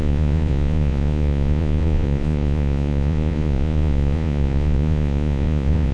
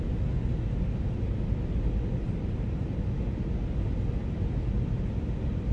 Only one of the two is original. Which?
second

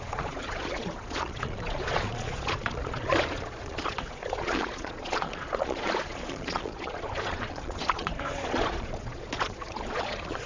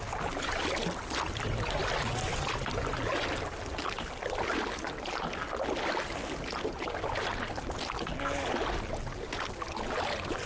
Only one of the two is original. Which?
second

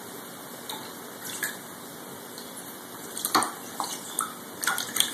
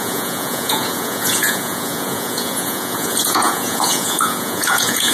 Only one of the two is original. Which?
first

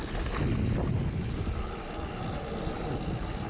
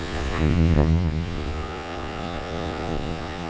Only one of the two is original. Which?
first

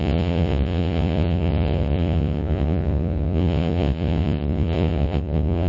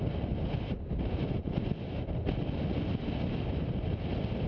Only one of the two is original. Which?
second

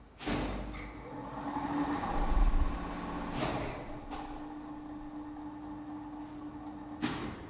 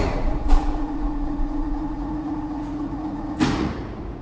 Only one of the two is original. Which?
first